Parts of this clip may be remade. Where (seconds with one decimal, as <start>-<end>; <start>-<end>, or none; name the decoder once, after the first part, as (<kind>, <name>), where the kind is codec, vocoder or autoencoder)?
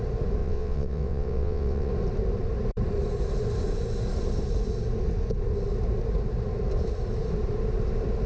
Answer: 0.4-1.9 (vocoder, WaveNeXt)